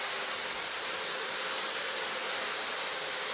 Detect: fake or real real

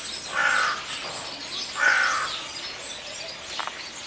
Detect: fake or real real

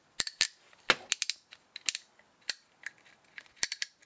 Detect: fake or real real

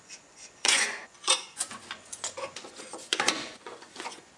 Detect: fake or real fake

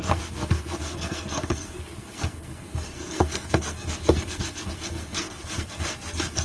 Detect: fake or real fake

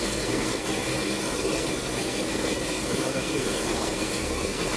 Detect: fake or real fake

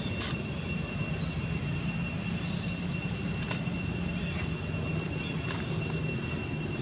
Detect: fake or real real